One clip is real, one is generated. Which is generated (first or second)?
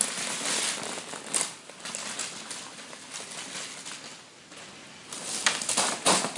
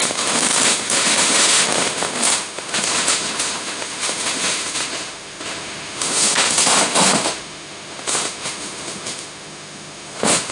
second